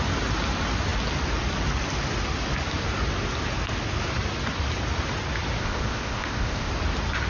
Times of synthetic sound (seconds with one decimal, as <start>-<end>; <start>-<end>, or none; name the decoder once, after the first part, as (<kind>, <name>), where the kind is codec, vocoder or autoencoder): 5.6-6.7 (codec, ZipCodec)